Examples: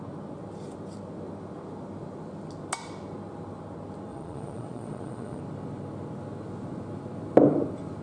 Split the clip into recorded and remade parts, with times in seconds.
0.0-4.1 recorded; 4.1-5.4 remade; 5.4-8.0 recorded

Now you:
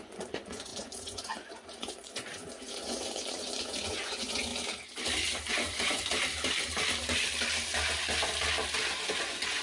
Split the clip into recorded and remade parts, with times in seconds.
0.0-4.5 remade; 4.5-5.5 recorded; 5.5-6.1 remade; 6.1-9.1 recorded; 9.1-9.6 remade

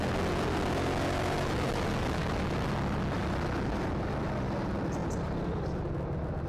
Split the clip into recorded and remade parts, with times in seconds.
0.0-5.0 recorded; 5.0-5.9 remade; 5.9-6.5 recorded